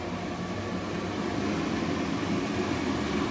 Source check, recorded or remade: recorded